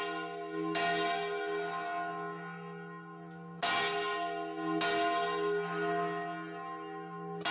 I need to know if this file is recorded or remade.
recorded